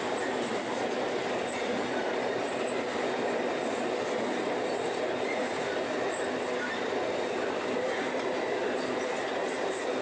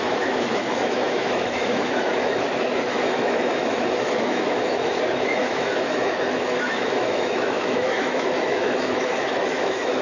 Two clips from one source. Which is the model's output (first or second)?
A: second